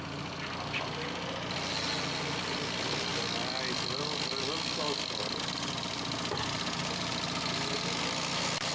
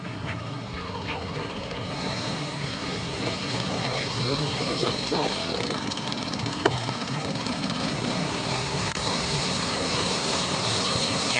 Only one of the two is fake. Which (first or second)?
second